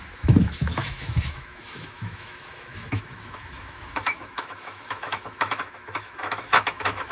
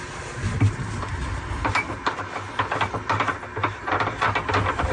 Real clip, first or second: second